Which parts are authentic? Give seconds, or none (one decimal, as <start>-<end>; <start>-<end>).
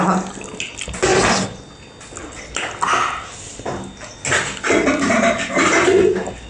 0.0-6.5